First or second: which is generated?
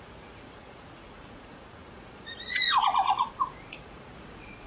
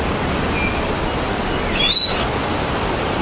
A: first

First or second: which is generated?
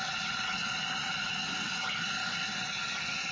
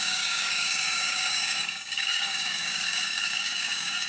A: second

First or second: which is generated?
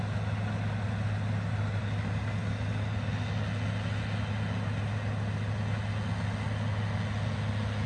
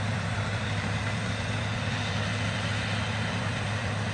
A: second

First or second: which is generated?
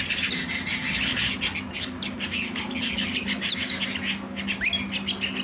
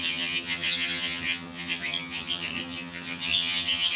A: second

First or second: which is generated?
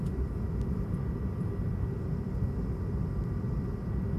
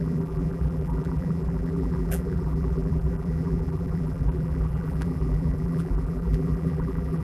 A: second